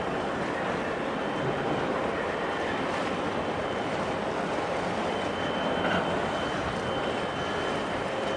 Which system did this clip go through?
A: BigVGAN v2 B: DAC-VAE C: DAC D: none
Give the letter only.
A